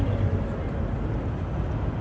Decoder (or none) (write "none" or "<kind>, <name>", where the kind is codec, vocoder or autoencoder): none